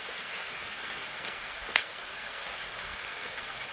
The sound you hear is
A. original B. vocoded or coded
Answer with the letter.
B